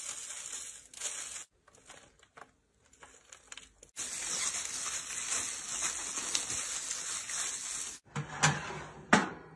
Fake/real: real